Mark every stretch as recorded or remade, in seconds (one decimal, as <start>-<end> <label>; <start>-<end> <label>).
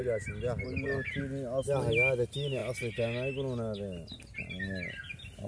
0.0-5.5 recorded